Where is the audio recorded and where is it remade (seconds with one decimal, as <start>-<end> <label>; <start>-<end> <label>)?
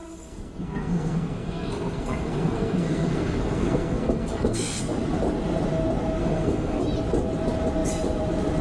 0.0-4.8 remade; 4.8-6.2 recorded; 6.2-6.8 remade; 6.8-8.6 recorded